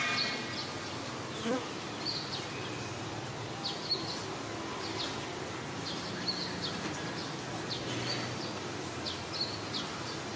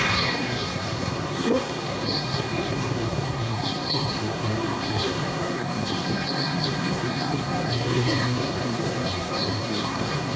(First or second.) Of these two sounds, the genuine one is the first